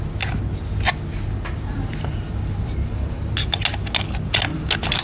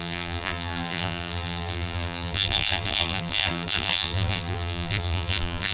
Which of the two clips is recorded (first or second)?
first